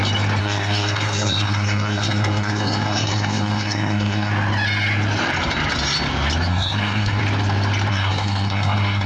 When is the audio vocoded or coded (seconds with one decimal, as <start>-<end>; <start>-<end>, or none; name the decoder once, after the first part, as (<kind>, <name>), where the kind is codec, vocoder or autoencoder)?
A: 0.4-4.3 (codec, SNAC); 6.5-7.2; 7.9-9.1